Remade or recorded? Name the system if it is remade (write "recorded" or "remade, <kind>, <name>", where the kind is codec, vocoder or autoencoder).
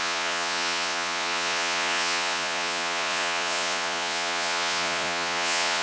remade, vocoder, Vocos